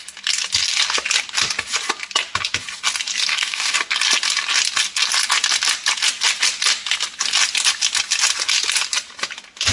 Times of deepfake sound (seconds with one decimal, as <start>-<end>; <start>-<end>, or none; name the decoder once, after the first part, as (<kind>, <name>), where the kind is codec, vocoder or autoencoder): 3.3-3.8 (codec, DAC)